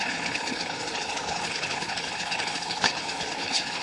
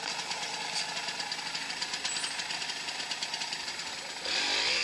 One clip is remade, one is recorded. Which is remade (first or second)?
first